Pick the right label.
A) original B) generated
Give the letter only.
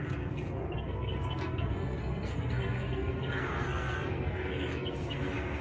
B